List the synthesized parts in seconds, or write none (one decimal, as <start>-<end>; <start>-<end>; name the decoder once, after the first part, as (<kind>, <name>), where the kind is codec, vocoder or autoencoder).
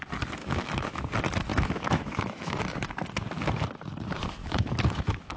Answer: 0.4-1.0 (autoencoder, DAC-VAE); 1.5-2.6; 4.4-5.4